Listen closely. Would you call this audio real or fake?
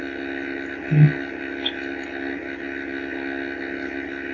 real